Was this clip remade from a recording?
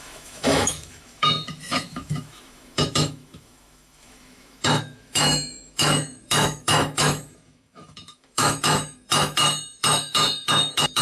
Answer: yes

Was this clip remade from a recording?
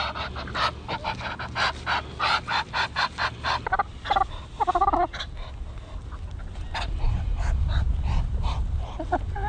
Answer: no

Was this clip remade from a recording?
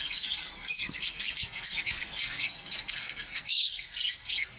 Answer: yes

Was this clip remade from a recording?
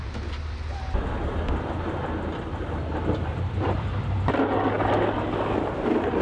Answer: no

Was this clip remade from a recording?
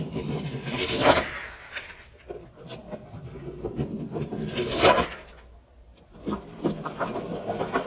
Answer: no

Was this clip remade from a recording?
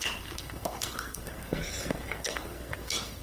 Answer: yes